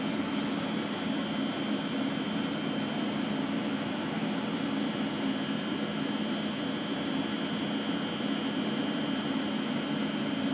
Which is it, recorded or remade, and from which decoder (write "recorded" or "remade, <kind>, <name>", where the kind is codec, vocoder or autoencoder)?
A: recorded